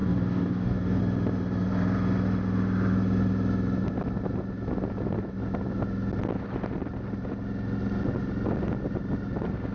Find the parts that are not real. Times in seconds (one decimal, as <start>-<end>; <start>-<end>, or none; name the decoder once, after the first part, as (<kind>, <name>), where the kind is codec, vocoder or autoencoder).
0.0-1.0 (codec, DAC)

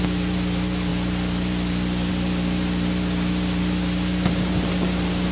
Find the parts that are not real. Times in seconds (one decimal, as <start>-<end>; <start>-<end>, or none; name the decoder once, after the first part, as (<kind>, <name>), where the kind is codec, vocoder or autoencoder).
none